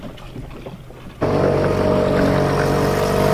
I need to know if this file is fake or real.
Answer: real